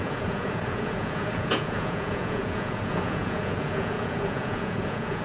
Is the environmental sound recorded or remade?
remade